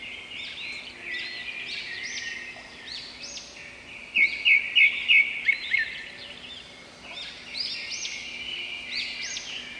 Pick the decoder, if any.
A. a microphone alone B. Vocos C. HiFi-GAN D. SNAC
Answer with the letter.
A